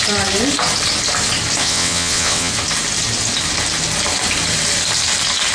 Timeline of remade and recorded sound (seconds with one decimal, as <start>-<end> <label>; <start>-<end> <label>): 0.0-1.6 recorded; 1.6-2.5 remade; 2.5-5.5 recorded